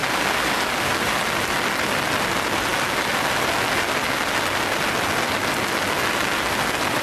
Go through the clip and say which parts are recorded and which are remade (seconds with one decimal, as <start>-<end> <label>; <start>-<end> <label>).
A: 0.0-7.0 recorded